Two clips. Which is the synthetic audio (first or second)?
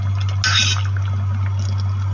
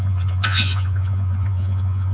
second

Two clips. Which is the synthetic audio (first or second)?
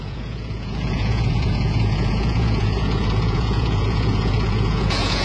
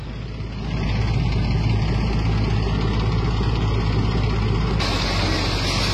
first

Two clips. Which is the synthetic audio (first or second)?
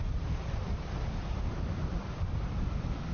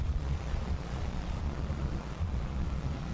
second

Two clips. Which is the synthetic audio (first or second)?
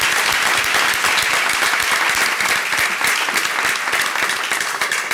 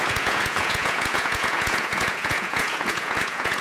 second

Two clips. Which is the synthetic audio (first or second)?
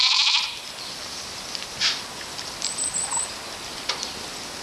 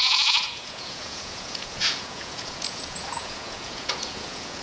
second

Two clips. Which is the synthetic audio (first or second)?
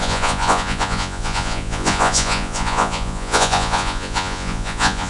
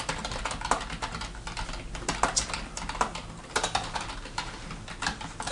first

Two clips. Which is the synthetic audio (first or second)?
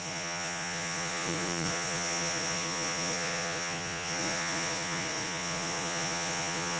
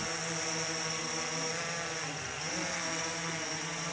first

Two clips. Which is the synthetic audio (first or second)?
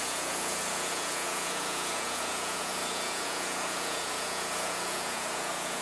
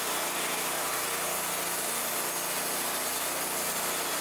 first